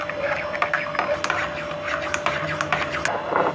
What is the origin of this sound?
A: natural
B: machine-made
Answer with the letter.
A